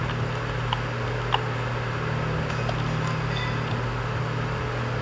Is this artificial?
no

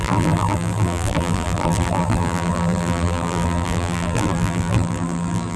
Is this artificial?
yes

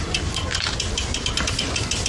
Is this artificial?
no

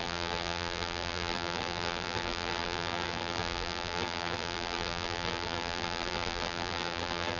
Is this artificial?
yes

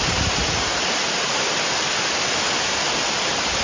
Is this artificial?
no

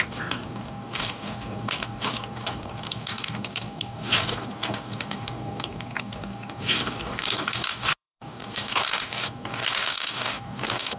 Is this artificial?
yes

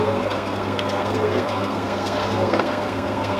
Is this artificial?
yes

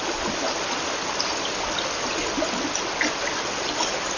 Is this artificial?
no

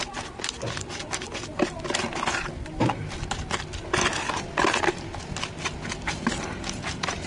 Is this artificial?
no